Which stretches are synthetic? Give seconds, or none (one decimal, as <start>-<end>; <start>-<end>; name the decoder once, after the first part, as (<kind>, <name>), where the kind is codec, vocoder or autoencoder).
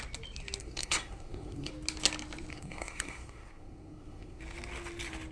0.6-1.7 (codec, SNAC); 2.5-4.4